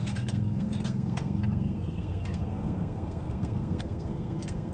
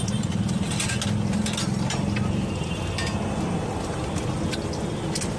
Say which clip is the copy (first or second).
first